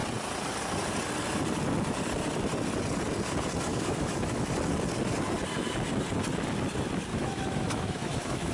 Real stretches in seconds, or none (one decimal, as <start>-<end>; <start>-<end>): 0.0-3.7; 4.5-7.1